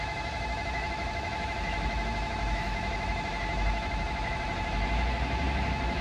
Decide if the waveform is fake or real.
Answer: fake